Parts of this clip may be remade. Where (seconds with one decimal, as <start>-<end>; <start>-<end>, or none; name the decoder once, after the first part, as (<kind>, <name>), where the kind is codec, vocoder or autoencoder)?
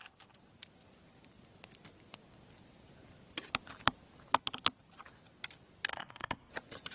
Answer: 5.9-6.5 (codec, SNAC)